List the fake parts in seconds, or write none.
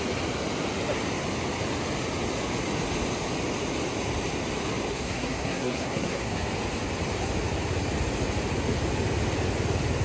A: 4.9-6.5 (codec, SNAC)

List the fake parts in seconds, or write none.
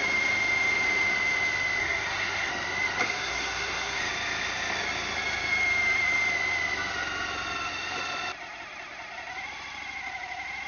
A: 1.8-2.5 (codec, SNAC); 3.0-4.0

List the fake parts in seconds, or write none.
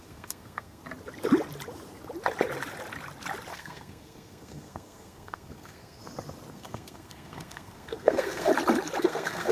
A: 0.0-0.8 (codec, SNAC); 3.5-6.0; 6.5-8.5; 9.0-9.5